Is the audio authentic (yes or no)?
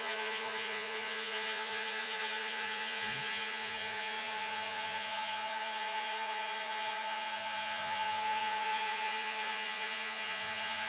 no